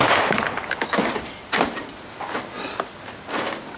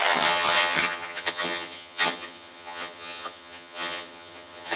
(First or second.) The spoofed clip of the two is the second